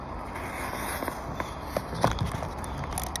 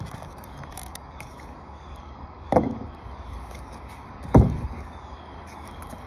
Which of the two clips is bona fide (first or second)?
first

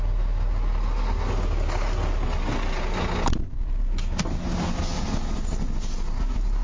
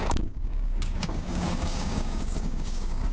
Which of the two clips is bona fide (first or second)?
first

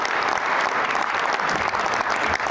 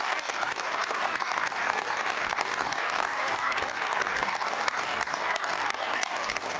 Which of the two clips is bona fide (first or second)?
first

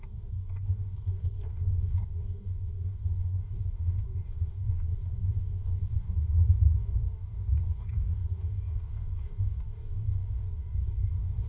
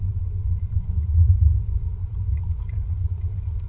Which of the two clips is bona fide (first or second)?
second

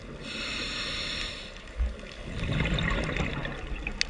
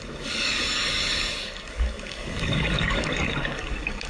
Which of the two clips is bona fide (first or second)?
first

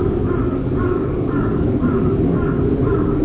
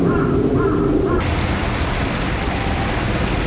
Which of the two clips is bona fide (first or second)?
second